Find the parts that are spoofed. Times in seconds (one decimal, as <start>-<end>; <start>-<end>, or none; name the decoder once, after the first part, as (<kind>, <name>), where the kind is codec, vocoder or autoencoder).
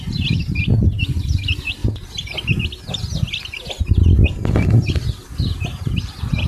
0.0-1.8 (vocoder, BigVGAN v2); 5.7-6.5